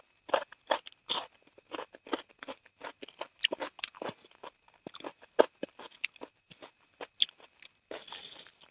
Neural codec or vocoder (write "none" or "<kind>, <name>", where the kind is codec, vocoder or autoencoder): none